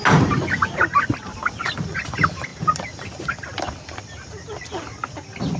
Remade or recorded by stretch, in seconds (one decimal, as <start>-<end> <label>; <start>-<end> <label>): 0.0-5.6 recorded